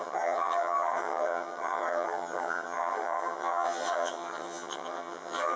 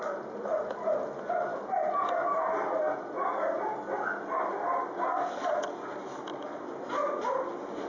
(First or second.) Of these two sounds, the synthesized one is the first